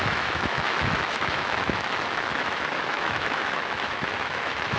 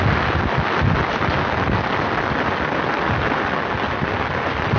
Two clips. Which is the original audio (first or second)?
second